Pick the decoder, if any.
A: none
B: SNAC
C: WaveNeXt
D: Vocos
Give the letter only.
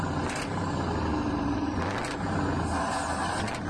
A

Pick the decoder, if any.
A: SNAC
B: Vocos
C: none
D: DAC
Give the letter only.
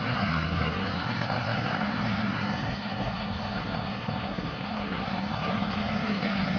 A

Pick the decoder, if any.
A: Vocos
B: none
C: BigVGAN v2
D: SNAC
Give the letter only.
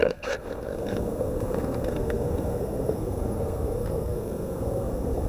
D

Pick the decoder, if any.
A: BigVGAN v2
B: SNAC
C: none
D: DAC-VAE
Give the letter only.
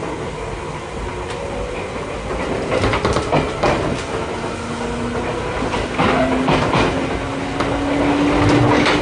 C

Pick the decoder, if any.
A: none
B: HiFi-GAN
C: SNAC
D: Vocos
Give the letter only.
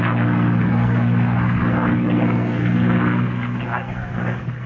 C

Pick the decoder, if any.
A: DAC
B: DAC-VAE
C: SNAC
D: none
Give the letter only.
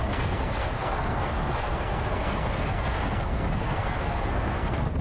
C